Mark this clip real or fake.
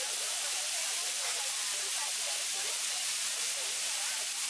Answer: real